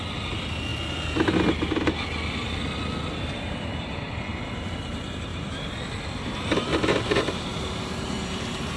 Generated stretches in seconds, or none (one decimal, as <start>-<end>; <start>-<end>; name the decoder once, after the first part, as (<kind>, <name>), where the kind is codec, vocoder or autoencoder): 5.3-6.0 (vocoder, BigVGAN v2); 6.7-8.8